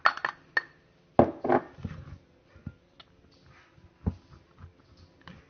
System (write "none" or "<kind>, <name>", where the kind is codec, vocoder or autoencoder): none